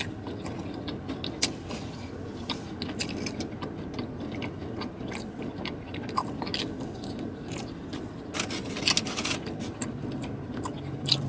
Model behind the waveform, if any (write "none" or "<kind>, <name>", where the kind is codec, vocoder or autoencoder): none